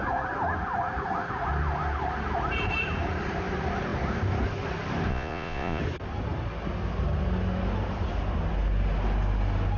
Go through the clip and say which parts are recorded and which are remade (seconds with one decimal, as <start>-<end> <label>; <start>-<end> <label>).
0.0-5.1 recorded; 5.1-5.8 remade; 5.8-9.8 recorded